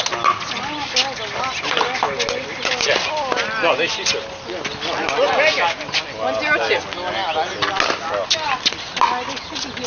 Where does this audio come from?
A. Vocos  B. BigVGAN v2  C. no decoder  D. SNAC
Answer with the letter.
C